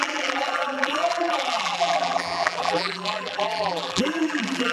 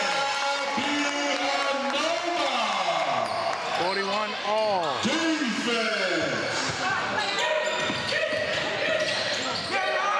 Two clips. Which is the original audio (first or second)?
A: second